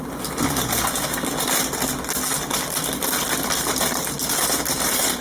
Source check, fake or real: real